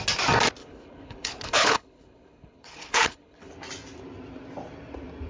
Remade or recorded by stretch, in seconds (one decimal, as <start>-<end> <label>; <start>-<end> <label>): 0.0-0.6 recorded; 0.6-3.5 remade; 3.5-5.3 recorded